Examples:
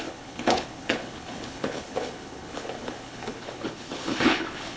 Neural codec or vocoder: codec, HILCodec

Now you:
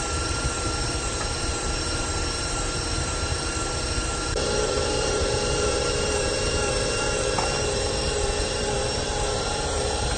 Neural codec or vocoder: vocoder, BigVGAN v2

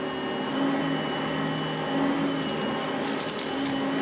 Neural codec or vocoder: none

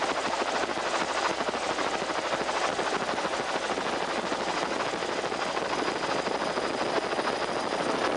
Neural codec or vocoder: none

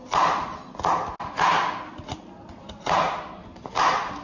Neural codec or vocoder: none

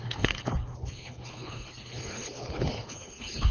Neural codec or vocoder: codec, HILCodec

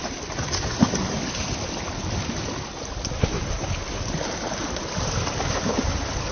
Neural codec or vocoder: none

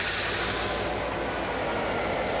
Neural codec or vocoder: none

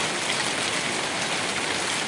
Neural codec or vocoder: none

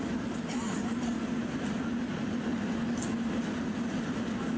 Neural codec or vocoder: none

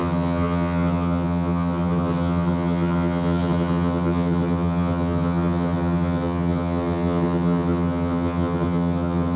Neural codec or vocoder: vocoder, HiFi-GAN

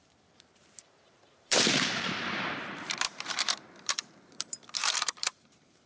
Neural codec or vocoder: vocoder, BigVGAN v2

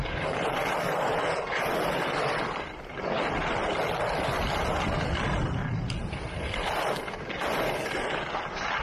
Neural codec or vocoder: none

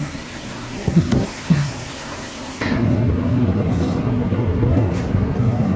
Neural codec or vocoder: codec, SNAC